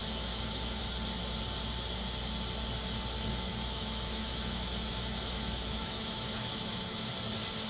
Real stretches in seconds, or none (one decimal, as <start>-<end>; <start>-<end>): 0.8-3.5; 7.1-7.7